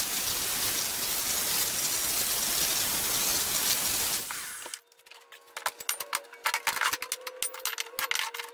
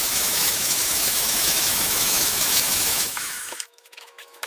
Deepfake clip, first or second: second